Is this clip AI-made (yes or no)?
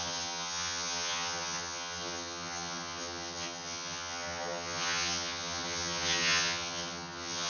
yes